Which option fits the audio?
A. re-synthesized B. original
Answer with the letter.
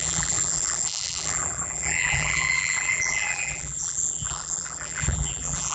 A